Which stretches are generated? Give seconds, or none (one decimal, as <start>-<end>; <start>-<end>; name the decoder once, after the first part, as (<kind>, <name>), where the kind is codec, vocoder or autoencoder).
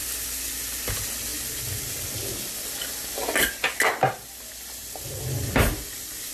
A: none